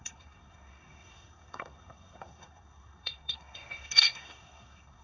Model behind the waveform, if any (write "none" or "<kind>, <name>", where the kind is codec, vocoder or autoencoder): codec, SNAC